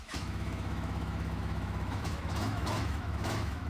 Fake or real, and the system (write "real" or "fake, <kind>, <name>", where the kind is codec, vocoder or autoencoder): fake, autoencoder, DAC-VAE